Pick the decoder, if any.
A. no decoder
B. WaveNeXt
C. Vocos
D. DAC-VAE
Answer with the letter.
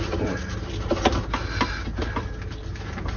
A